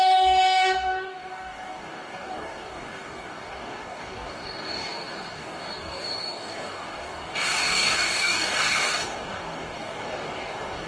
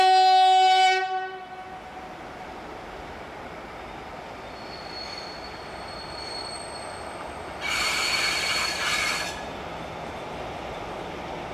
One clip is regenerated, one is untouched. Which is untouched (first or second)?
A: second